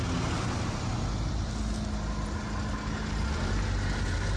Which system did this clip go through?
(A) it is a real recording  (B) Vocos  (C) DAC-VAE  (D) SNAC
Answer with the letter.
A